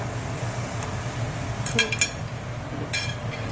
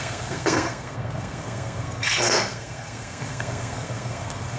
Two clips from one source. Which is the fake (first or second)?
second